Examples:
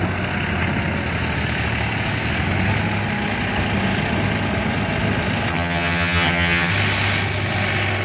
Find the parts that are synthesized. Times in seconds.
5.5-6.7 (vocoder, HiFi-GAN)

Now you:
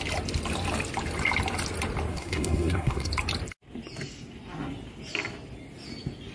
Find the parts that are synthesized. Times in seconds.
2.1-3.1 (codec, SNAC)

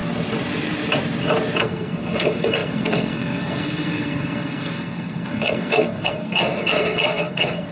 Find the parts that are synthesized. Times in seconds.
1.6-7.7 (codec, SNAC)

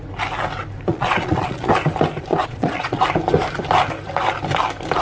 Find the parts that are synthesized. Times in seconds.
0.9-1.7 (vocoder, Vocos); 2.3-3.0

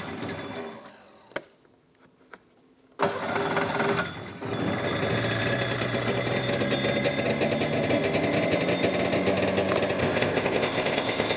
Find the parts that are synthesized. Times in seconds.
10.0-11.4 (codec, ZipCodec)

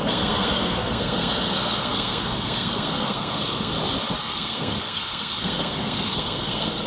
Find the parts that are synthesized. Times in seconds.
0.0-3.7 (codec, SNAC); 4.2-6.9

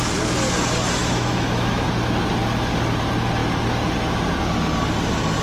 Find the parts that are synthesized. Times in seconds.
1.0-1.9 (autoencoder, DAC-VAE)

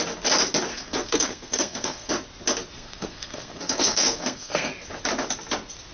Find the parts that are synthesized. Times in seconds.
0.7-2.1 (codec, SNAC); 2.7-4.7